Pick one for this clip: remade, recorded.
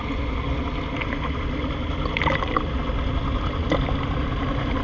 recorded